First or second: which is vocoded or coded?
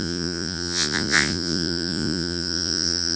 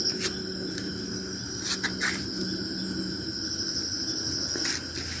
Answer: first